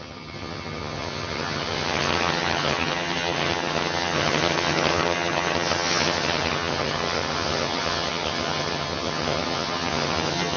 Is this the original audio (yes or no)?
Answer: no